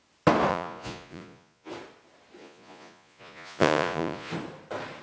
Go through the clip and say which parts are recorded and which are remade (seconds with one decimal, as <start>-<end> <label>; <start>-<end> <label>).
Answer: 0.0-0.5 recorded; 0.5-1.7 remade; 1.7-2.4 recorded; 2.4-4.3 remade; 4.3-5.0 recorded